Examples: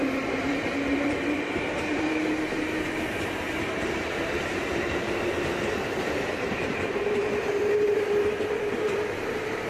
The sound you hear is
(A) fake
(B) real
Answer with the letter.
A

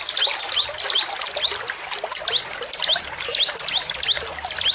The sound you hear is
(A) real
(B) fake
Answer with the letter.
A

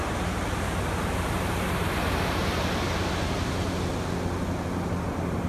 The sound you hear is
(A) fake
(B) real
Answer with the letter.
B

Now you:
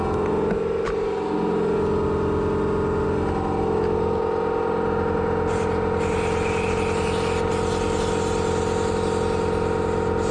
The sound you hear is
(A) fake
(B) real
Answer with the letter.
B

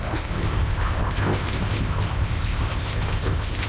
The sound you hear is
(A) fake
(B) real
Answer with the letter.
A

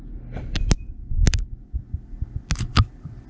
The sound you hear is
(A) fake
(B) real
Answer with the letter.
B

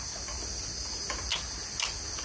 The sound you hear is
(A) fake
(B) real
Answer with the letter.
B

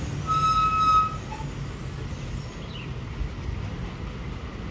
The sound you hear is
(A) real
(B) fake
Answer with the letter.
A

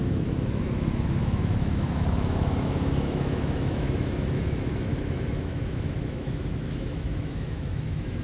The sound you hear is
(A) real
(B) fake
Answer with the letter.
B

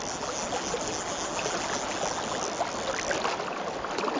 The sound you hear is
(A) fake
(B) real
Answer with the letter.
B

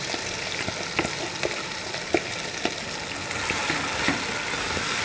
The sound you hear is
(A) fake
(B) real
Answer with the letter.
B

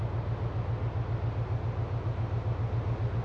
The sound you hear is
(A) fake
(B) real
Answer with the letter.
B